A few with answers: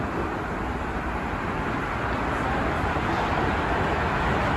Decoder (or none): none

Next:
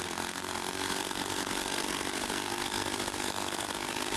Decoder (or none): codec, SNAC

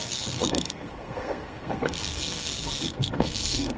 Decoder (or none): codec, SNAC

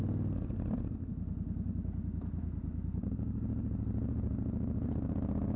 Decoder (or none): none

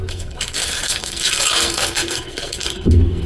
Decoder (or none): codec, SNAC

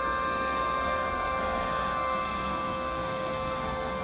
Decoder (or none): codec, SNAC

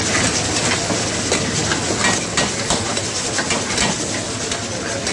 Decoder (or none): none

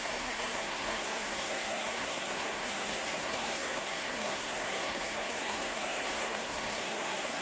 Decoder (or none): codec, SNAC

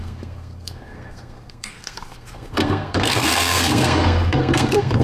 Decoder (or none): codec, SNAC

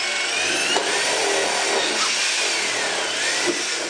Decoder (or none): none